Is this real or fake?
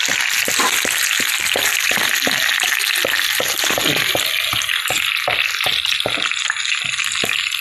real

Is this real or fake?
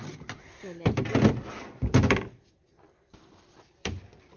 real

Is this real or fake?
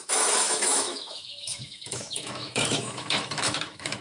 fake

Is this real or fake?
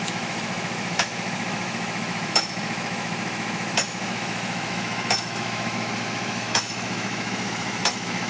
fake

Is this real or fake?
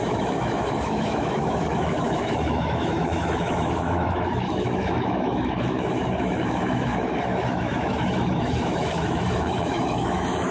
fake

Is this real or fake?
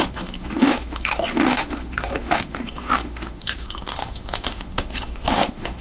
fake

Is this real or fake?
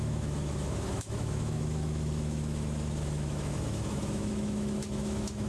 fake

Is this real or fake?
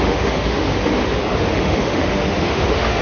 fake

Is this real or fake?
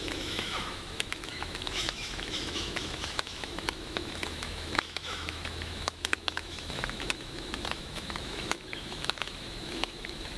fake